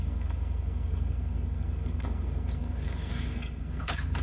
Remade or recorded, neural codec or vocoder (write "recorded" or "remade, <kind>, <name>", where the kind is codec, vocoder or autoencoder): remade, codec, SNAC